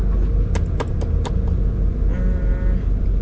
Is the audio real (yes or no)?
yes